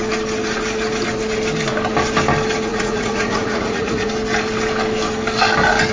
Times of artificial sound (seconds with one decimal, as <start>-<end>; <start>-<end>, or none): 2.7-4.1